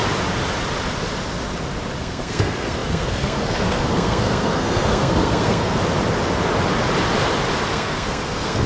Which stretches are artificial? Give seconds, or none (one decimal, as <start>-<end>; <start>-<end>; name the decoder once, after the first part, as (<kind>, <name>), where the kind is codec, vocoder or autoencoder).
2.0-5.8 (codec, SNAC); 7.7-8.7